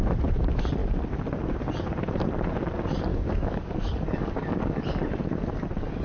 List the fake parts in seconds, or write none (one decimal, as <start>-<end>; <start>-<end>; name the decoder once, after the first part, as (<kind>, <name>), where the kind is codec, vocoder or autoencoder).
3.1-4.8 (codec, DAC)